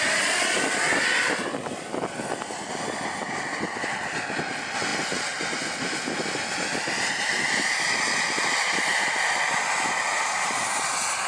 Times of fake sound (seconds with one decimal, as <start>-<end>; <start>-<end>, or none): none